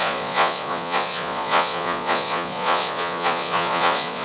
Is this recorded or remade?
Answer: remade